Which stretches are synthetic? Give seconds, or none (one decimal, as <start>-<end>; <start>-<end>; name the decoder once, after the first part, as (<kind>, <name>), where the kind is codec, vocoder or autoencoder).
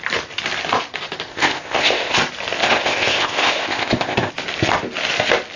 1.3-2.2 (codec, ZipCodec); 2.6-4.3